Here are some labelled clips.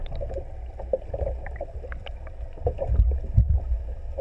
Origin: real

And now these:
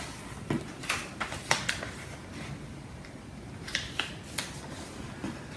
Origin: real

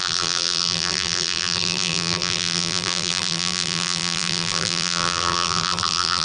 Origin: fake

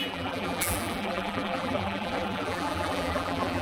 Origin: fake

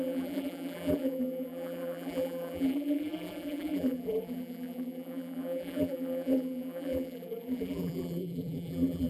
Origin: fake